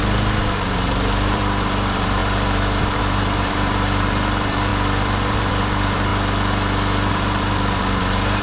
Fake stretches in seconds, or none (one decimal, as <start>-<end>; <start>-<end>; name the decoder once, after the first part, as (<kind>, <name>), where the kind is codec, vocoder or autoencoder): 0.0-6.1 (vocoder, BigVGAN v2); 7.1-8.4